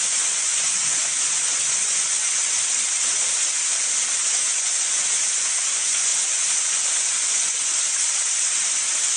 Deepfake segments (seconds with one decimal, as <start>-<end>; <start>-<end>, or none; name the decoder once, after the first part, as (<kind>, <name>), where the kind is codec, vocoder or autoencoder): 0.0-2.4 (vocoder, Vocos); 4.3-7.7